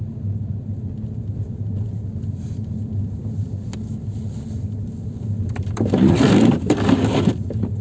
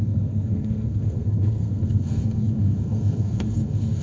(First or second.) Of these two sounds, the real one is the first